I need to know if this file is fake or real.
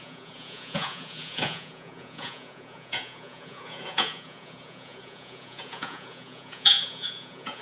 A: fake